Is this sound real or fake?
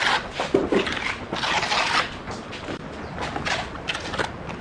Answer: real